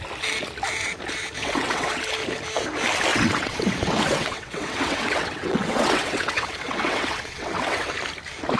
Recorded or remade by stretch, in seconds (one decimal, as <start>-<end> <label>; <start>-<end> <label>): 0.0-1.4 recorded; 1.4-2.0 remade; 2.0-3.1 recorded; 3.1-7.9 remade; 7.9-8.6 recorded